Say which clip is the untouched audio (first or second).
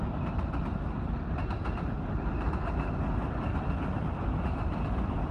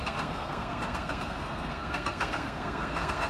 first